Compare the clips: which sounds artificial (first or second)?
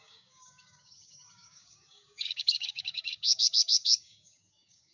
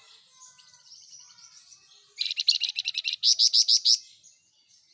first